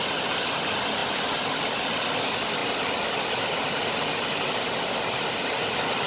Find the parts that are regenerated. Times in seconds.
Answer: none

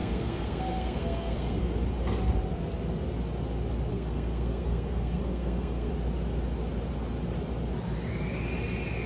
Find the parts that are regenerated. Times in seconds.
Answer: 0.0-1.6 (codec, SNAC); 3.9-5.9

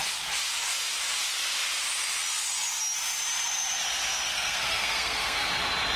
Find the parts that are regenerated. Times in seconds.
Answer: 4.3-5.5 (codec, SNAC)

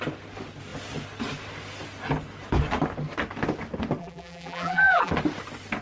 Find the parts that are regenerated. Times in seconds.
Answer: 4.0-5.1 (vocoder, BigVGAN v2)